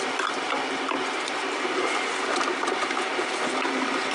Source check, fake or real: real